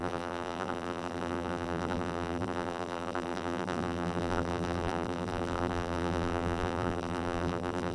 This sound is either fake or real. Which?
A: fake